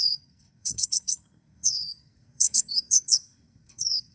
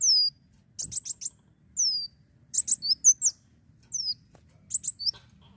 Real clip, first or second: second